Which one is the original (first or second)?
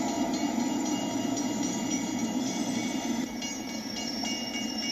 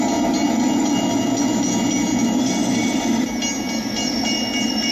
second